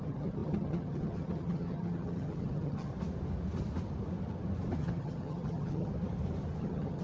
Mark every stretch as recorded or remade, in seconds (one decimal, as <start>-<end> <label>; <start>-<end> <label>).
0.0-2.9 remade; 2.9-4.8 recorded; 4.8-5.9 remade; 5.9-6.6 recorded; 6.6-7.0 remade